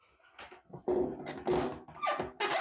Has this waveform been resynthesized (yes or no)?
no